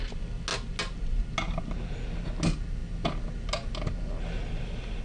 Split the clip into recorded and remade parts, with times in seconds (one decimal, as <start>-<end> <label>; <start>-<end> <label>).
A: 0.0-5.0 recorded